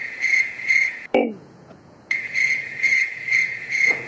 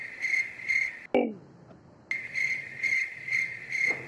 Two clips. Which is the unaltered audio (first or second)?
second